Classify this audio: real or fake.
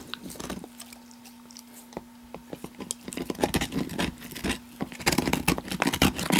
real